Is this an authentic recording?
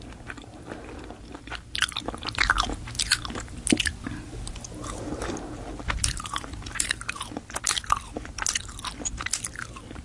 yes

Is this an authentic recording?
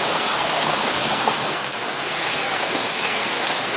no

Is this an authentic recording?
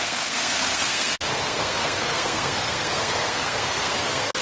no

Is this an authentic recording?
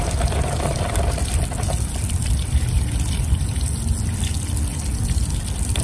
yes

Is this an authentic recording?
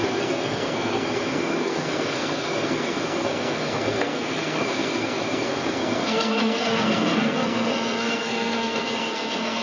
no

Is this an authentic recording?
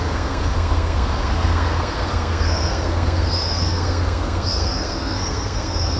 no